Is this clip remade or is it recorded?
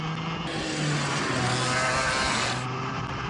recorded